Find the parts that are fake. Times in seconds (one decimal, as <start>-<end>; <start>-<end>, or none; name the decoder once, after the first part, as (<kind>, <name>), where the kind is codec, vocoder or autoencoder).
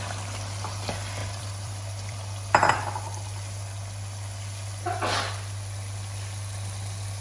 1.2-2.7 (vocoder, BigVGAN v2)